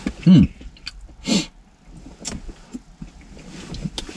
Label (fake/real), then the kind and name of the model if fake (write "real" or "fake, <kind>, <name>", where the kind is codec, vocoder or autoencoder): real